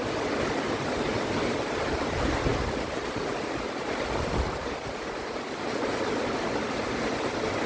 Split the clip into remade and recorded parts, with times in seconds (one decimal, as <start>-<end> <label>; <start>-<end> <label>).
0.0-7.7 recorded